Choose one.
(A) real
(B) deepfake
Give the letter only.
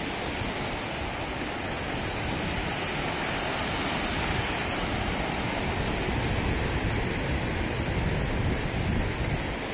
A